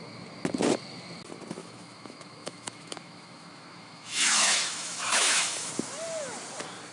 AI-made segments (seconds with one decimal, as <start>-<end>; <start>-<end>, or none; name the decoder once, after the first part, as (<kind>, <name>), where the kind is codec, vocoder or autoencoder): 1.6-5.7 (autoencoder, DAC-VAE)